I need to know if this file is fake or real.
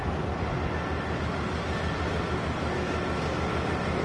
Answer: real